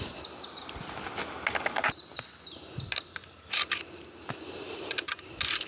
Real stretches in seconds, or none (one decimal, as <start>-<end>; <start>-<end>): 0.0-5.7